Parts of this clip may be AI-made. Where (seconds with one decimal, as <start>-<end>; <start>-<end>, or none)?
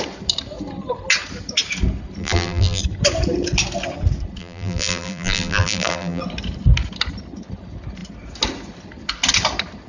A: 2.2-2.8; 4.4-6.2